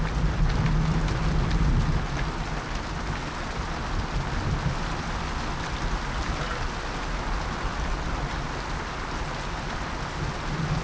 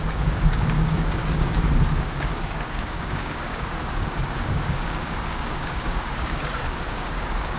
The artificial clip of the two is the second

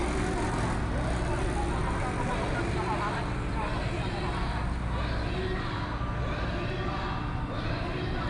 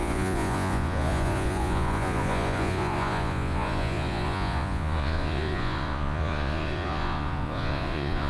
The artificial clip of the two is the second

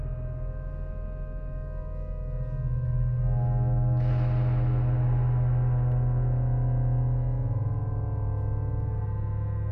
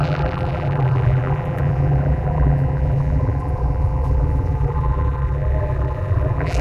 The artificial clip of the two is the second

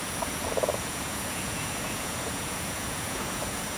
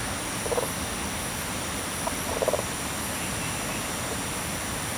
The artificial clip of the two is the first